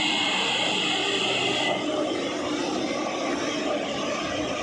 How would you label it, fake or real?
real